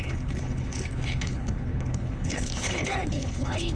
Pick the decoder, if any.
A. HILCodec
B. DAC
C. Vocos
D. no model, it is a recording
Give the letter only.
A